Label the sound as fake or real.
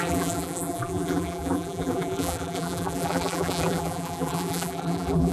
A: fake